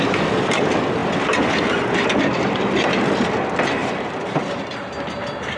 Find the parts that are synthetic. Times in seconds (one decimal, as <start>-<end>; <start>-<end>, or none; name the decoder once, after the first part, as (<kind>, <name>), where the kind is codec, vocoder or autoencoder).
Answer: 3.8-4.6 (vocoder, BigVGAN v2)